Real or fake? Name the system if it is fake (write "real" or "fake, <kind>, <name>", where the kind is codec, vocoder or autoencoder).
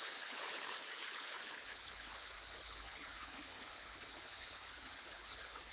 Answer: fake, codec, HILCodec